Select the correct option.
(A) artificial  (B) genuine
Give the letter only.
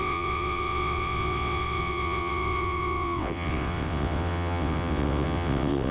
A